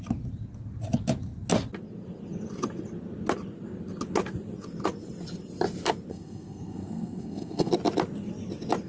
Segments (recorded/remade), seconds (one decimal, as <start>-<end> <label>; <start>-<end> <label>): 0.0-6.1 recorded; 6.1-7.7 remade; 7.7-8.9 recorded